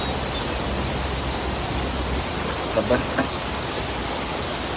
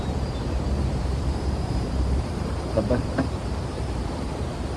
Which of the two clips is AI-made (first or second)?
second